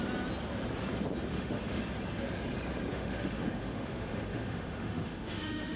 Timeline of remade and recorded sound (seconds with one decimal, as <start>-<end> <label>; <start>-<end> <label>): 0.0-1.3 recorded; 1.3-1.8 remade; 1.8-2.9 recorded; 2.9-5.8 remade